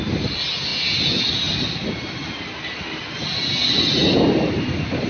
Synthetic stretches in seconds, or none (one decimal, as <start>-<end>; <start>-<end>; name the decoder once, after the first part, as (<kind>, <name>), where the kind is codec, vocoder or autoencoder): none